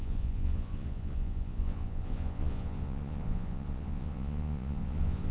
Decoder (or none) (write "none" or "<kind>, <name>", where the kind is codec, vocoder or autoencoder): vocoder, Vocos